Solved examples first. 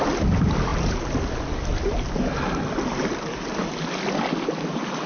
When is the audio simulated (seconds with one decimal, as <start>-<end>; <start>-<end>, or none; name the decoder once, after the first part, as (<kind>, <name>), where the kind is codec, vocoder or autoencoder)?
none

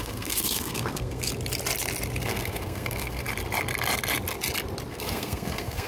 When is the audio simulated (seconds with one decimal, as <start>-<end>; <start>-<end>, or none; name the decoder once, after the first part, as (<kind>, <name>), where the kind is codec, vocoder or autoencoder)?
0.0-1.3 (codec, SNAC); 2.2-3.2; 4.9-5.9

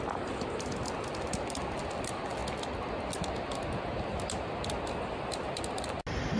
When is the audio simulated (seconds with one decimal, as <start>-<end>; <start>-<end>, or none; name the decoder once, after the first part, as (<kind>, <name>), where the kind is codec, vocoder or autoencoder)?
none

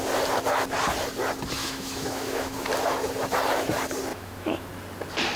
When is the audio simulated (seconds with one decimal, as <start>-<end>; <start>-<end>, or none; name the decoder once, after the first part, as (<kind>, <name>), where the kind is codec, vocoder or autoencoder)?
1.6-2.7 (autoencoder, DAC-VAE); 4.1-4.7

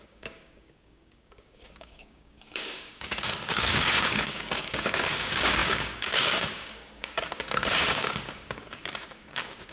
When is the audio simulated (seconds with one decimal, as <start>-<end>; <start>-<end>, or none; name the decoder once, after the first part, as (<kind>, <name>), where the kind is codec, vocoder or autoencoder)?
0.0-9.7 (codec, DAC)